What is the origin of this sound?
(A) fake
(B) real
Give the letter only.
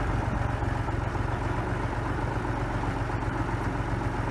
B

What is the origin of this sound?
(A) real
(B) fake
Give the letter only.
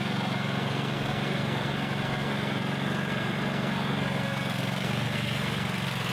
B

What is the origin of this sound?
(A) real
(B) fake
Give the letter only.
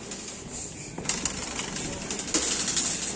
A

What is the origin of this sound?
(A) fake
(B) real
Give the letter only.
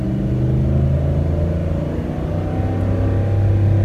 B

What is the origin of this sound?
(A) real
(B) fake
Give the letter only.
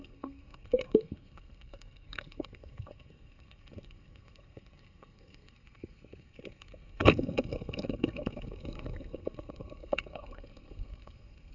B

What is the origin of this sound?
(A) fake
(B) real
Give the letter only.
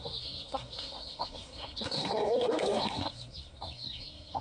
A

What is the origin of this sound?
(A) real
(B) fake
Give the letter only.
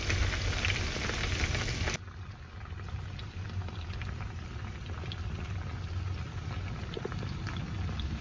A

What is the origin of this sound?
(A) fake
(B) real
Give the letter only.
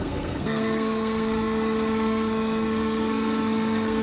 A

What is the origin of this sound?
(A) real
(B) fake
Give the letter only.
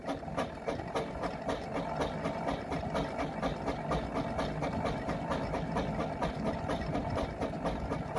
A